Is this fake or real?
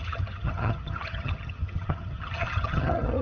fake